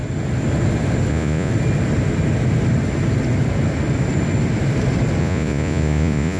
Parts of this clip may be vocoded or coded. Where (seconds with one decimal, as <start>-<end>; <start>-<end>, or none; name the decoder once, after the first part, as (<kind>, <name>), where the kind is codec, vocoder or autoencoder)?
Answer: 1.1-1.5 (vocoder, Vocos); 5.2-6.4